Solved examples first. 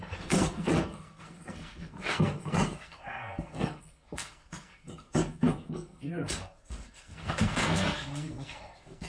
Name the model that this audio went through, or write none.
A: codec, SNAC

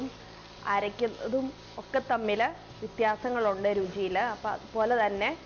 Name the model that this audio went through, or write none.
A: none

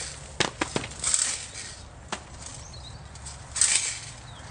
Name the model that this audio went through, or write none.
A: none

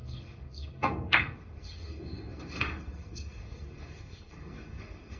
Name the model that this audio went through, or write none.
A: codec, SNAC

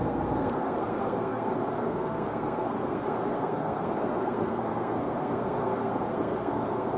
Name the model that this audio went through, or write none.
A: codec, SNAC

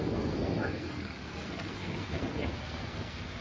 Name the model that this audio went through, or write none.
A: codec, SNAC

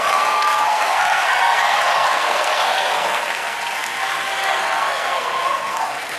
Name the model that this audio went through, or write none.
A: codec, SNAC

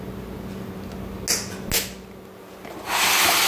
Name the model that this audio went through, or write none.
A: none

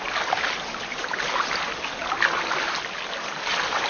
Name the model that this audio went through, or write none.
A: none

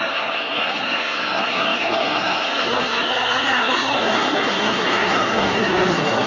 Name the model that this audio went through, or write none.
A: codec, SNAC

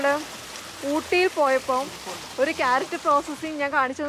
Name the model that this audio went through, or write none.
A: none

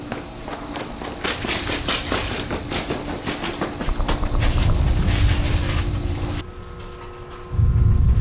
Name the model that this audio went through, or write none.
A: none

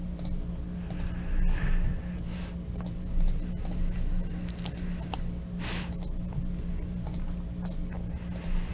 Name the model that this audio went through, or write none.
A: none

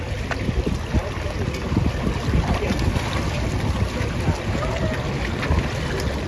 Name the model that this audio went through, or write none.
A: none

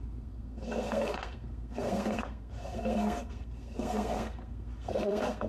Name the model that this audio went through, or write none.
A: codec, SNAC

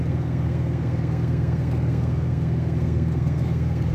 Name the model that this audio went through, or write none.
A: codec, SNAC